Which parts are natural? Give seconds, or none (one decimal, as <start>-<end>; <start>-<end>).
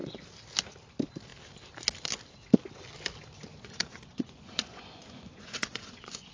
0.0-3.5